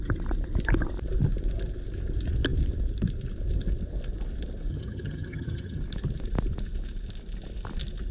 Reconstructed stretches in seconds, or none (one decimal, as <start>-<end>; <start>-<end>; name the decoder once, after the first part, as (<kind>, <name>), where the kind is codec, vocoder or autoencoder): 4.7-5.8 (vocoder, HiFi-GAN)